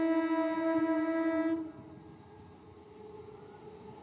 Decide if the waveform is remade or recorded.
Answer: recorded